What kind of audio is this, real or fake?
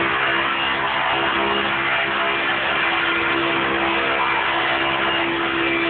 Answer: real